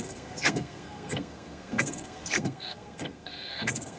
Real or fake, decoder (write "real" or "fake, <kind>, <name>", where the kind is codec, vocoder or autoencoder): fake, codec, SNAC